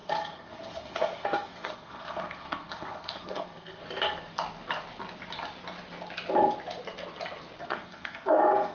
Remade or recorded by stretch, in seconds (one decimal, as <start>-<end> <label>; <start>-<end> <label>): 0.0-3.8 remade; 3.8-7.6 recorded; 7.6-8.7 remade